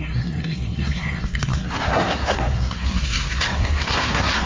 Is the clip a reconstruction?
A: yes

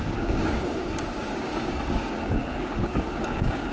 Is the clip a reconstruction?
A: yes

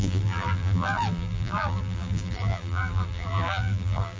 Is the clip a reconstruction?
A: yes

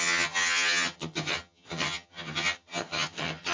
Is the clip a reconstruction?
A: yes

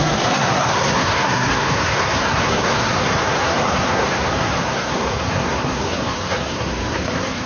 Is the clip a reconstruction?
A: yes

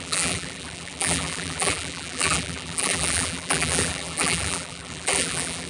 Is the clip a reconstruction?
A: yes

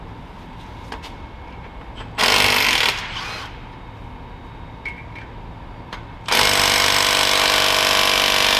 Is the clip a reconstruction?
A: no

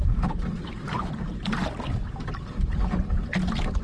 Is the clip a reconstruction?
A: no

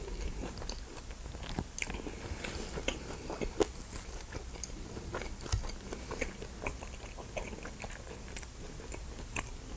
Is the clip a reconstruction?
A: no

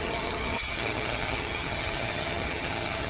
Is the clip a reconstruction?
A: yes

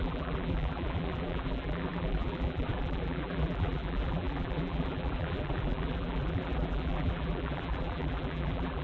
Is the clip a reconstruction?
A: yes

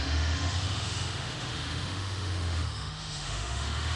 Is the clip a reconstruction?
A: yes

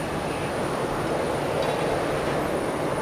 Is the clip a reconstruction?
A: no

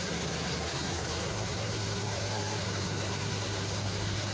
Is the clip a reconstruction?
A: yes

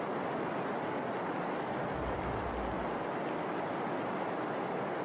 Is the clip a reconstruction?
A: no